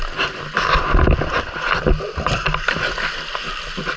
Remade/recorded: recorded